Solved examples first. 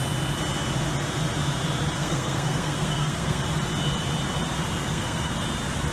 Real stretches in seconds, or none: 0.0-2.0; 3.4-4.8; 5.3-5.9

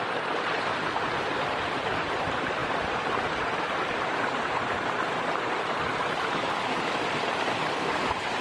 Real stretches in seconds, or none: 0.0-8.4

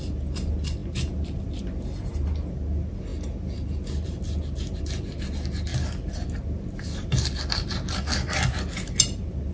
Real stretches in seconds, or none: 0.0-9.5

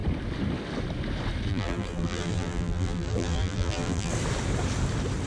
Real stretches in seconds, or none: 0.0-1.5; 4.1-5.3

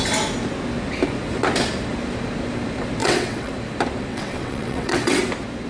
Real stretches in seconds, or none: 0.0-3.0; 3.5-4.1; 5.2-5.7

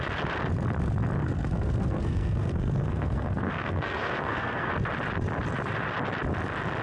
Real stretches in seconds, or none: 0.0-1.2; 4.7-6.8

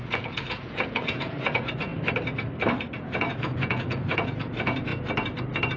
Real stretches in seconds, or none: 1.9-3.0; 4.9-5.8